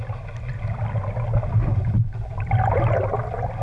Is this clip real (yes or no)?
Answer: yes